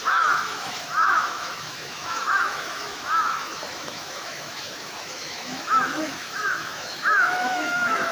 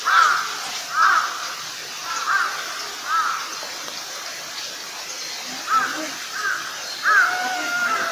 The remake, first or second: first